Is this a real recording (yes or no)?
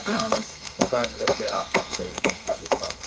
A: no